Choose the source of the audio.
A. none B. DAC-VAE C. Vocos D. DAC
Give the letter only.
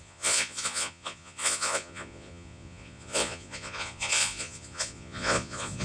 C